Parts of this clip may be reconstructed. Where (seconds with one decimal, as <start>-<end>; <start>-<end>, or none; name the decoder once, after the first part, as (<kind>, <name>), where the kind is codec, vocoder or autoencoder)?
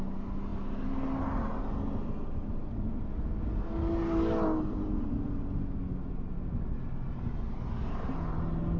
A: none